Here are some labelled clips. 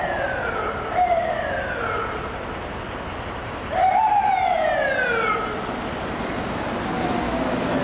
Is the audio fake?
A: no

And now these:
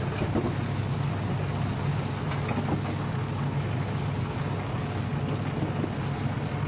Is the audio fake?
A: no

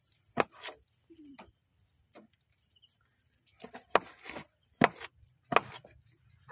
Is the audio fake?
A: no